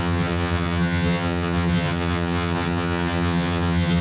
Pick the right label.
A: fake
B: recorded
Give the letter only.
A